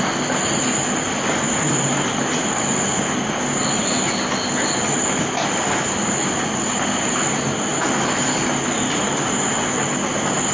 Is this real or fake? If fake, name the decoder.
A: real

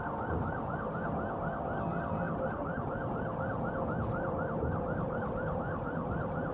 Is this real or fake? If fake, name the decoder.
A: fake, vocoder, BigVGAN v2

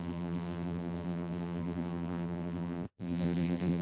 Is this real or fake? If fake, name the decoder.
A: fake, vocoder, BigVGAN v2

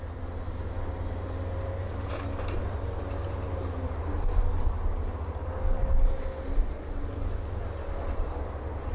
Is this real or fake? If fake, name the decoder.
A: real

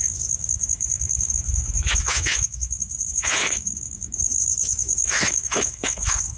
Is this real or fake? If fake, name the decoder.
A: fake, autoencoder, DAC-VAE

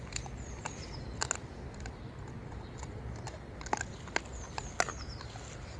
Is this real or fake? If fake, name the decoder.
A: real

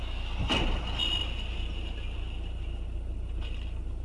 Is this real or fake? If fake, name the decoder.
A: real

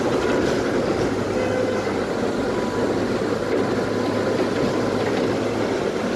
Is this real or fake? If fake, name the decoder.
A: real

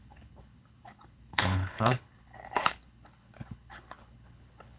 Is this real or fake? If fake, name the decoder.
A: fake, codec, HILCodec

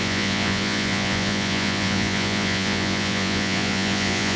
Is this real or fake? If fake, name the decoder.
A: fake, vocoder, Vocos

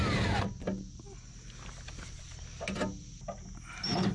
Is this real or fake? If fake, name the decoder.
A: real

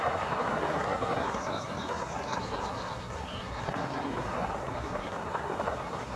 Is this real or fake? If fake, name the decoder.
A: fake, codec, SNAC